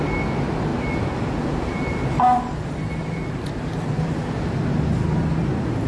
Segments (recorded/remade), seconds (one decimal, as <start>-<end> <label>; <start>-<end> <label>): 0.0-0.7 recorded; 0.7-4.2 remade; 4.2-4.7 recorded; 4.7-5.9 remade